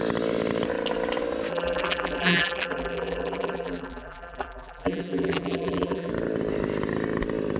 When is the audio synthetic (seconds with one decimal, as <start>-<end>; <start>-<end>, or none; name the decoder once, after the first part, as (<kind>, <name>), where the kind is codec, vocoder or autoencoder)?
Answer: 1.5-6.1 (vocoder, BigVGAN v2)